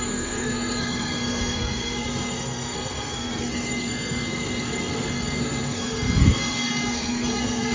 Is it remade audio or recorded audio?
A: remade